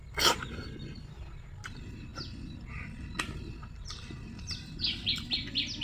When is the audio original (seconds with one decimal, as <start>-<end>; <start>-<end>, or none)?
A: 0.0-5.8